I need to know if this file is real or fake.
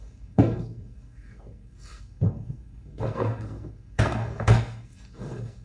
fake